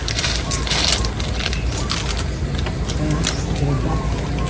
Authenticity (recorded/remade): recorded